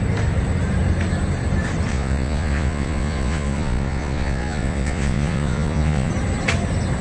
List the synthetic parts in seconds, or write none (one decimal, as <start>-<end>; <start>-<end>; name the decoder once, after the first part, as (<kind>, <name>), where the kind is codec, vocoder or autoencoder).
1.9-6.1 (vocoder, Vocos)